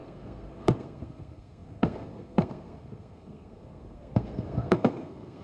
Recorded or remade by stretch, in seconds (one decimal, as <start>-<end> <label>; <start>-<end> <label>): 0.0-5.4 remade

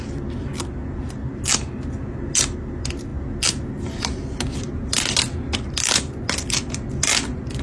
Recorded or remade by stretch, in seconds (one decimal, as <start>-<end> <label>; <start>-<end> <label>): 0.0-7.6 recorded

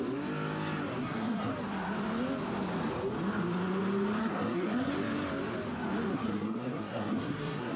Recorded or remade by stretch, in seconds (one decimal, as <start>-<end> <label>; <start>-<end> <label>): 0.0-1.0 recorded; 1.0-1.5 remade; 1.5-4.2 recorded; 4.2-4.9 remade; 4.9-6.1 recorded; 6.1-7.8 remade

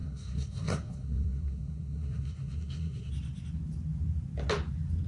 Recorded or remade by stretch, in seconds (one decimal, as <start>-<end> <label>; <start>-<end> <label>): 0.0-3.1 remade; 3.1-5.1 recorded